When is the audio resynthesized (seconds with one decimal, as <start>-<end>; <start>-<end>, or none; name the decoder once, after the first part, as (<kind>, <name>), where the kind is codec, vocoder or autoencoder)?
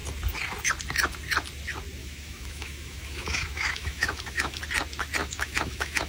2.0-4.6 (autoencoder, DAC-VAE); 5.2-6.1